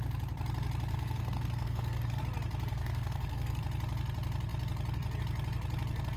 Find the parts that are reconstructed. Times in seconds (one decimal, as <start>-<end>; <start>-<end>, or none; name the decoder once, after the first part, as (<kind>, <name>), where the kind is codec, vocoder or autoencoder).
0.9-2.2 (codec, SNAC); 2.7-3.6